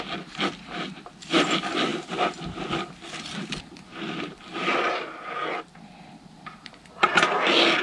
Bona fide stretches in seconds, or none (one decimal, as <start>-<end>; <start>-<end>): 5.4-6.3; 7.1-7.8